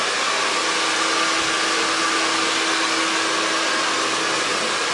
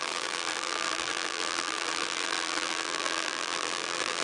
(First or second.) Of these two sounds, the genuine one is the first